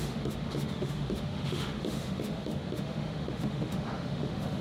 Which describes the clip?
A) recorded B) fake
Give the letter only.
B